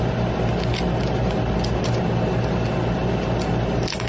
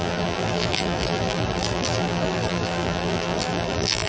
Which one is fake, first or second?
second